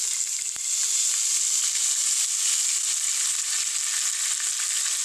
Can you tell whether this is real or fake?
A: real